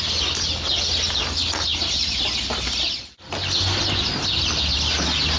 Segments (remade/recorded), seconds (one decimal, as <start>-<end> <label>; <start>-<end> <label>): 0.0-5.4 recorded